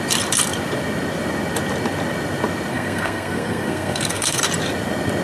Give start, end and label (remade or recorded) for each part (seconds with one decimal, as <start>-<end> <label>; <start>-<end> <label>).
0.0-2.7 recorded; 2.7-4.4 remade; 4.4-5.2 recorded